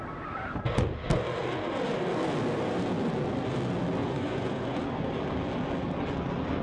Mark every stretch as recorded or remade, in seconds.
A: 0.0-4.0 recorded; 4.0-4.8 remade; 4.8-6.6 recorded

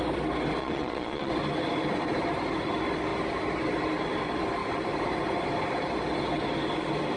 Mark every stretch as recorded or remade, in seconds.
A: 0.0-0.6 recorded; 0.6-1.3 remade; 1.3-7.2 recorded

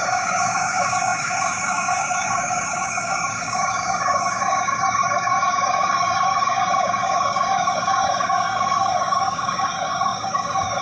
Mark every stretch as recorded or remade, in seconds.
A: 0.0-10.8 remade

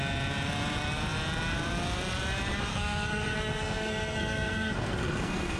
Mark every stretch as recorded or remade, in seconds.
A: 0.0-2.7 recorded; 2.7-5.6 remade

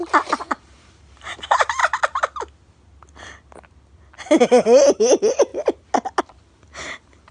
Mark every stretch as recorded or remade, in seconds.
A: 0.0-1.8 remade; 1.8-4.4 recorded; 4.4-5.5 remade; 5.5-6.2 recorded; 6.2-7.3 remade